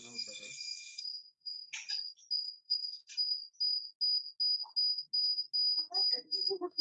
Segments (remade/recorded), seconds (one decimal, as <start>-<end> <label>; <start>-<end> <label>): 0.0-1.7 remade; 1.7-2.4 recorded; 2.4-3.0 remade; 3.0-6.1 recorded; 6.1-6.8 remade